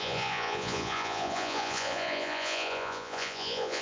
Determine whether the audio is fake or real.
fake